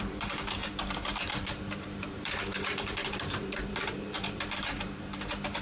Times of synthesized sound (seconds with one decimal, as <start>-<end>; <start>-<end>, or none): 0.0-5.6